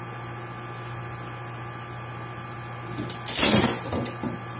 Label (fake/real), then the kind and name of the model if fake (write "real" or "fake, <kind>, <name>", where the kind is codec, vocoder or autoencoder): real